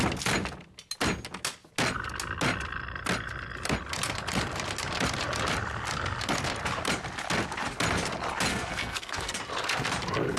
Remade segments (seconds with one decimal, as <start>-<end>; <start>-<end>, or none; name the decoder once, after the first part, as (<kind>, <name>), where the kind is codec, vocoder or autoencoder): 8.5-9.4 (codec, SNAC)